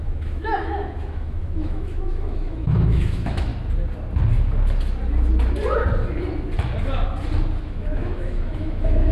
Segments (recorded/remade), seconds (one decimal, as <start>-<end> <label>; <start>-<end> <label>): 0.0-3.5 remade; 3.5-7.6 recorded; 7.6-9.1 remade